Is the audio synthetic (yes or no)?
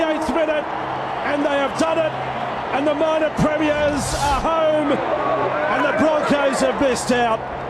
no